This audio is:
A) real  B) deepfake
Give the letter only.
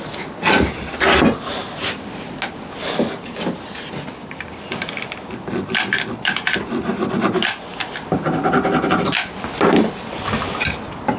A